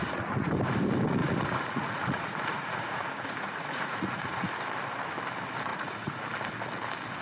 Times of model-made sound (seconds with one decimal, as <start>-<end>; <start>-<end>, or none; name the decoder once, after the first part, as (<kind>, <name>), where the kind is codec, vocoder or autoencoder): 0.0-0.5 (vocoder, Vocos); 1.2-4.4; 5.7-6.2